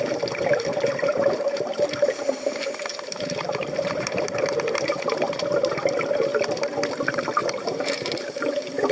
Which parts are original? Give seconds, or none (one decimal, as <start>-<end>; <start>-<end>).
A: 6.3-6.9